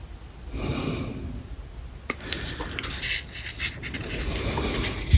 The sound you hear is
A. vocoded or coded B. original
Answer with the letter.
B